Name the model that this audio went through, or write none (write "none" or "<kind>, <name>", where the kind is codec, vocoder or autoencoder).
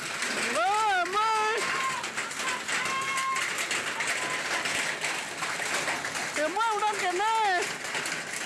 none